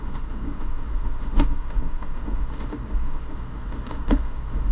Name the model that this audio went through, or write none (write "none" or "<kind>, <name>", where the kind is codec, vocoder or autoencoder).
autoencoder, DAC-VAE